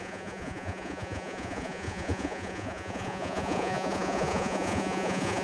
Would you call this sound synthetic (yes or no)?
yes